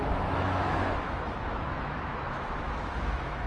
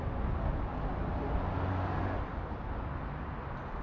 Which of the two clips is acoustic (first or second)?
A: second